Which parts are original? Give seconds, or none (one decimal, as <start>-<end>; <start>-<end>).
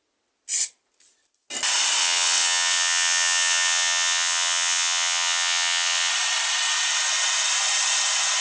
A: 0.0-2.0; 6.1-8.4